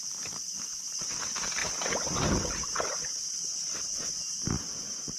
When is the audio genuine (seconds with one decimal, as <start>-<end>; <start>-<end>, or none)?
1.6-2.2